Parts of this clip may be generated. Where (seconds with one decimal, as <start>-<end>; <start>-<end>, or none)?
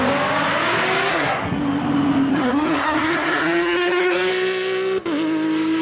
1.1-1.6; 2.3-4.3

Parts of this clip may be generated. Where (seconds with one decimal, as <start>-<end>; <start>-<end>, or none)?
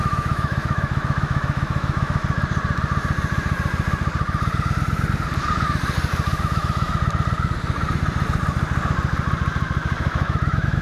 0.0-2.2; 6.4-6.9; 10.0-10.8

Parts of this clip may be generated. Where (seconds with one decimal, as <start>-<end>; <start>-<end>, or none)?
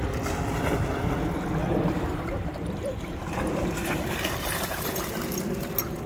1.6-5.1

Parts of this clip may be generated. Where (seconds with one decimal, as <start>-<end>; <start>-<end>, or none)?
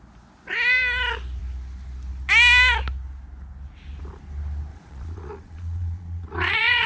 4.7-6.9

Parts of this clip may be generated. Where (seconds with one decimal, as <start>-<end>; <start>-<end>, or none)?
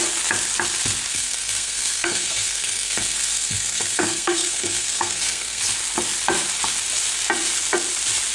1.1-5.6